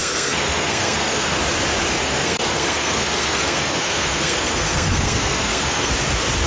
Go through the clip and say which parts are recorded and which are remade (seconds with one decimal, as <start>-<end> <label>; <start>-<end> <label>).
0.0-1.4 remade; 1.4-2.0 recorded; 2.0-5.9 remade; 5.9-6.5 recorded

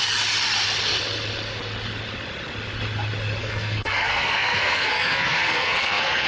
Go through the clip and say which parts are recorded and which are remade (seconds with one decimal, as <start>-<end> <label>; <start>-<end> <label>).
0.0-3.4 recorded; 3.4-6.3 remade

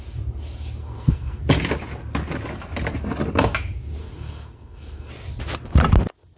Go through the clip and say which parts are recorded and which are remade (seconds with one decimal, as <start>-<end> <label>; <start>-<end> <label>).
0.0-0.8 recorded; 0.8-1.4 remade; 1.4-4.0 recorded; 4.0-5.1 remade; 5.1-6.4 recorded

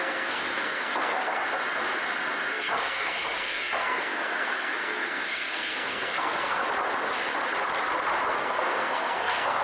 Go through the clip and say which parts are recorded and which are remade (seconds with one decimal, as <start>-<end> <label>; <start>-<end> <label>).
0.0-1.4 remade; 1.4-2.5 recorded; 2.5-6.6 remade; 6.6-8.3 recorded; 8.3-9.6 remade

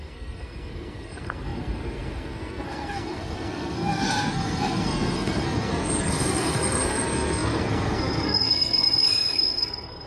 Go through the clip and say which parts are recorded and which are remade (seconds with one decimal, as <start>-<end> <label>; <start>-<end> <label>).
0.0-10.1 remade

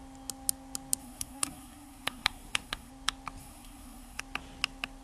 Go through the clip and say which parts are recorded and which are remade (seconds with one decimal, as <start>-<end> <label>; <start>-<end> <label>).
0.0-1.0 recorded; 1.0-2.9 remade; 2.9-3.4 recorded; 3.4-4.2 remade; 4.2-5.0 recorded